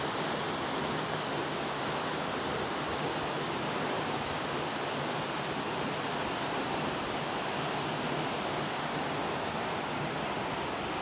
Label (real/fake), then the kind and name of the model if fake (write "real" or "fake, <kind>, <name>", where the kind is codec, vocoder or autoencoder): real